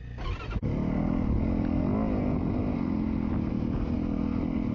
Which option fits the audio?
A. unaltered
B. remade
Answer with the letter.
A